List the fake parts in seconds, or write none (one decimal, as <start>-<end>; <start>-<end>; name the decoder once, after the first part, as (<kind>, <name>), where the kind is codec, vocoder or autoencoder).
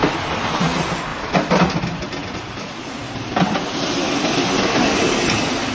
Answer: 0.0-0.6 (vocoder, BigVGAN v2); 1.1-1.7; 2.2-5.1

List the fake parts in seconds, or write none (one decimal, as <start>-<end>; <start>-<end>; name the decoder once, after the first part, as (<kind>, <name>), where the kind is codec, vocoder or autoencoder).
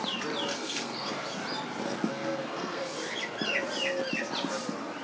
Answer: 0.5-1.1 (codec, SNAC); 2.1-2.8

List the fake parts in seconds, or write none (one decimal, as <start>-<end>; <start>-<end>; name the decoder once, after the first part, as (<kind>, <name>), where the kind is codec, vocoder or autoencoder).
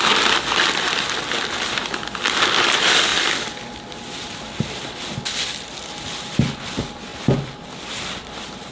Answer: none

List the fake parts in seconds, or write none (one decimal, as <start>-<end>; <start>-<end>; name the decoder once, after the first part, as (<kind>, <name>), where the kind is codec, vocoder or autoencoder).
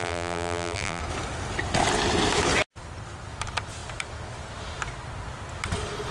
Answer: 0.0-1.0 (vocoder, BigVGAN v2)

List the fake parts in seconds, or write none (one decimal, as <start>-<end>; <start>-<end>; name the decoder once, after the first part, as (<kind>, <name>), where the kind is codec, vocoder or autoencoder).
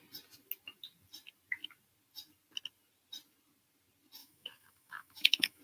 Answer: 4.2-5.6 (autoencoder, DAC-VAE)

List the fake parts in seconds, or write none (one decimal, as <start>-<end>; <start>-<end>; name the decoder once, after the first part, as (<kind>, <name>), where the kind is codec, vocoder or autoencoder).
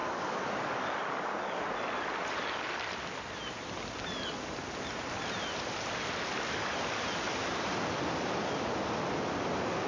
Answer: 0.0-1.6 (codec, DAC)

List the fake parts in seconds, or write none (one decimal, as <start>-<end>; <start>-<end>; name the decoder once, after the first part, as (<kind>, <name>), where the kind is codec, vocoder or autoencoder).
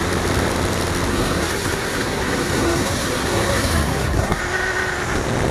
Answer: 1.1-4.4 (codec, SNAC)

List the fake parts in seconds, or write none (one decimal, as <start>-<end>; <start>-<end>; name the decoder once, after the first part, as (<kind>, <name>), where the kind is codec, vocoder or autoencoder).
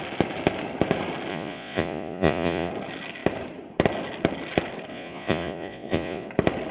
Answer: 1.3-2.7 (vocoder, Vocos); 4.9-6.3